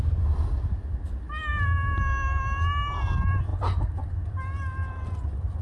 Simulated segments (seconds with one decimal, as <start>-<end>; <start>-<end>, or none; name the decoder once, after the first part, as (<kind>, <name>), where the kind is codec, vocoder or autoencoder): none